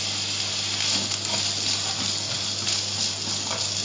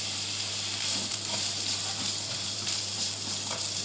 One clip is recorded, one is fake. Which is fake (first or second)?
second